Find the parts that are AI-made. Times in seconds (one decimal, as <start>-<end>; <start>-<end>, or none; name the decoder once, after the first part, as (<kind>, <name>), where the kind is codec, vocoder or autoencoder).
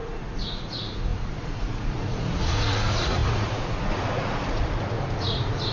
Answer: 0.0-5.7 (vocoder, Vocos)